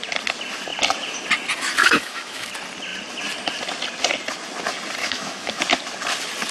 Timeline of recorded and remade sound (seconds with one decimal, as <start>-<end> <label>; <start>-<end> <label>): 0.0-1.8 recorded; 1.8-2.5 remade; 2.5-5.0 recorded; 5.0-5.6 remade; 5.6-6.5 recorded